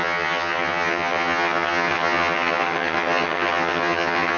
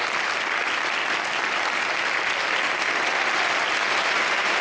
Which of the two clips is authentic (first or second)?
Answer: second